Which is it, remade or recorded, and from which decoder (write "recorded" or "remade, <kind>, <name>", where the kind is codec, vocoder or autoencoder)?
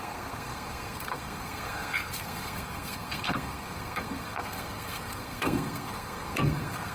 remade, codec, SNAC